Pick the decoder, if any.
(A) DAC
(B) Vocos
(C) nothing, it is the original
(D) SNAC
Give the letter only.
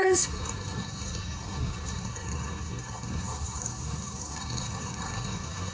D